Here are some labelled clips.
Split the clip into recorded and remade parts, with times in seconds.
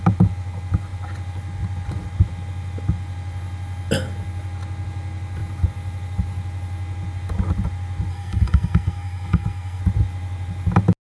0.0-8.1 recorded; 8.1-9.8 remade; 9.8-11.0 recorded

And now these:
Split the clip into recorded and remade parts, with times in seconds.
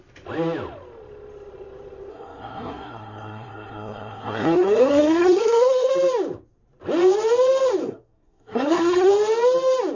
0.0-2.1 recorded; 2.1-5.9 remade; 5.9-7.8 recorded; 7.8-9.1 remade; 9.1-9.9 recorded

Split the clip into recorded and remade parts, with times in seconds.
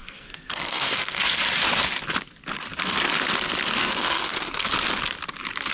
0.0-1.4 remade; 1.4-3.8 recorded; 3.8-4.7 remade; 4.7-5.7 recorded